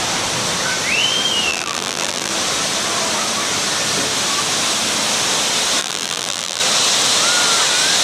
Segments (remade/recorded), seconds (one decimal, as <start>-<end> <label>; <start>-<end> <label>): 0.0-1.5 recorded; 1.5-2.3 remade; 2.3-5.8 recorded; 5.8-6.6 remade; 6.6-8.0 recorded